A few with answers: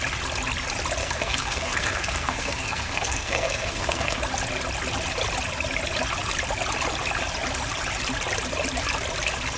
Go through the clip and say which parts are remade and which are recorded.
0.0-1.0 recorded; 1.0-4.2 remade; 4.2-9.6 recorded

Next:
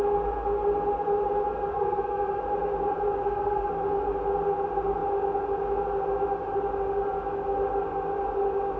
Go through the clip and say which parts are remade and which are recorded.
0.0-1.7 recorded; 1.7-2.4 remade; 2.4-3.2 recorded; 3.2-3.7 remade; 3.7-8.8 recorded

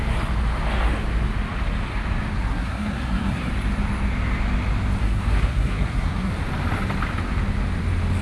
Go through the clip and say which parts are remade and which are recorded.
0.0-2.4 recorded; 2.4-3.5 remade; 3.5-5.0 recorded; 5.0-6.3 remade; 6.3-8.2 recorded

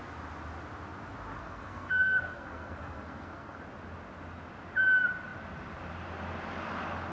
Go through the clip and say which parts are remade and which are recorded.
0.0-1.3 recorded; 1.3-3.6 remade; 3.6-7.1 recorded

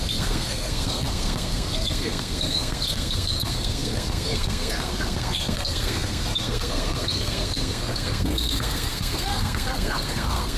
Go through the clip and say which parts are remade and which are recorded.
0.0-10.6 remade

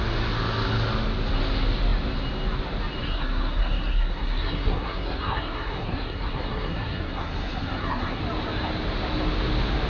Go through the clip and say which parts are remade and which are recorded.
0.0-3.0 recorded; 3.0-8.2 remade; 8.2-9.9 recorded

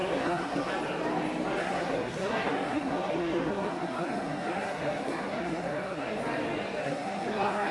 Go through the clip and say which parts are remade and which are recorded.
0.0-0.7 remade; 0.7-1.6 recorded; 1.6-6.2 remade; 6.2-6.8 recorded; 6.8-7.7 remade